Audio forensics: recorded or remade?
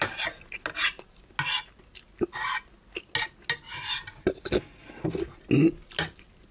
recorded